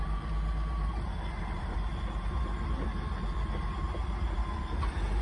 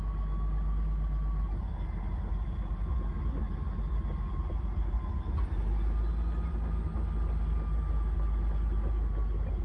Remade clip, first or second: first